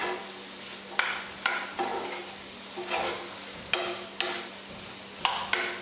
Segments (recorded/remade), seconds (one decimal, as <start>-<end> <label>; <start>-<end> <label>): 0.0-5.8 recorded